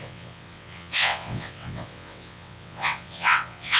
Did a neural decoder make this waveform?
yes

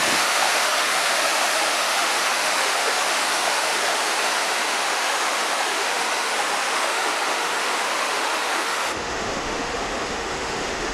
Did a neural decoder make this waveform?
yes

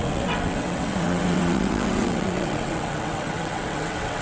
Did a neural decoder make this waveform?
yes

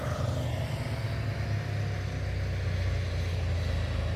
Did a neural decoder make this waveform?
no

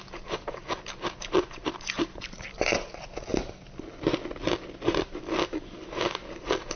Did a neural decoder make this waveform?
no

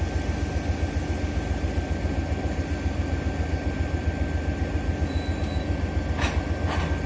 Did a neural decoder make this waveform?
no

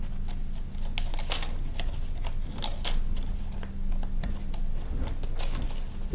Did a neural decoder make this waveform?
no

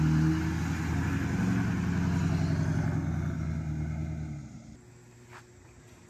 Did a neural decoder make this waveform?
no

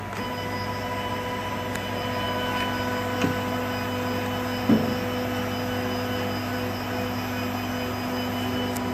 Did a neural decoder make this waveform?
no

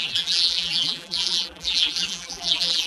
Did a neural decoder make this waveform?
yes